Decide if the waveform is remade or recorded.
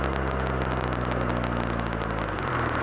recorded